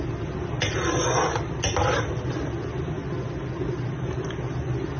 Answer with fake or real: real